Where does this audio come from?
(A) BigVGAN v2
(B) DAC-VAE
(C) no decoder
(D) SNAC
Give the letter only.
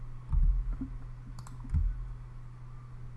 C